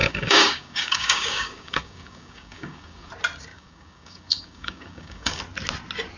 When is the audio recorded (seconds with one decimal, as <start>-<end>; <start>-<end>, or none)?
3.1-3.5; 5.4-6.2

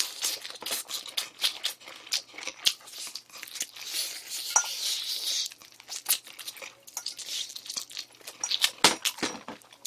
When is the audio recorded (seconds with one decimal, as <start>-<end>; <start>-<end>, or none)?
0.0-9.9

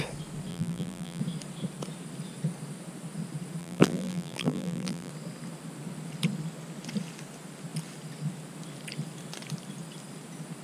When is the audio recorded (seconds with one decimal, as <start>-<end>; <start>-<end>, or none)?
0.0-0.5; 1.2-3.6; 5.1-10.6

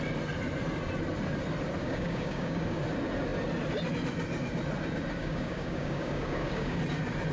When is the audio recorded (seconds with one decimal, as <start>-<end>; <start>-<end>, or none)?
0.0-1.8; 2.8-5.2; 6.8-7.3

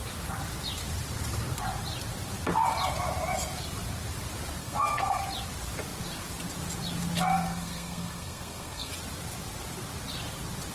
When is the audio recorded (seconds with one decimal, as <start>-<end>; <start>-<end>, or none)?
0.0-4.6; 5.2-7.3; 8.9-10.7